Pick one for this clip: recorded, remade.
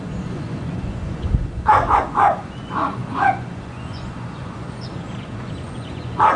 remade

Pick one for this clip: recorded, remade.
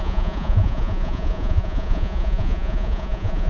remade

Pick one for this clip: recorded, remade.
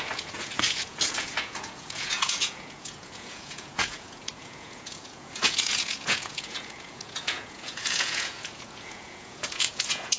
remade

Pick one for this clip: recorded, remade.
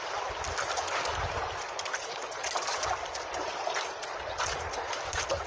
recorded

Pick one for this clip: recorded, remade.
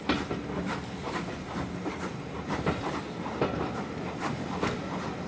recorded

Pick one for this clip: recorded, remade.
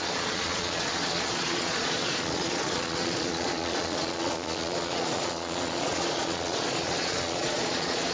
remade